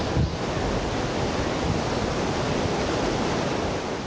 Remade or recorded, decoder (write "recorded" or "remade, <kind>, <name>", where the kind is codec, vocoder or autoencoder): recorded